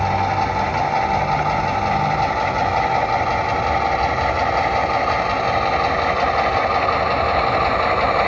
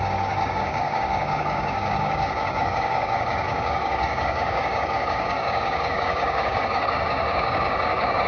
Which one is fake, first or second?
second